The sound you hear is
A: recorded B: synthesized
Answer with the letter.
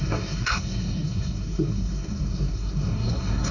B